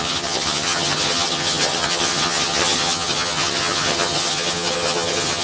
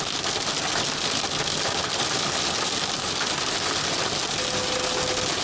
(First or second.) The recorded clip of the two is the second